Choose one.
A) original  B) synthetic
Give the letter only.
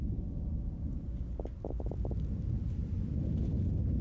A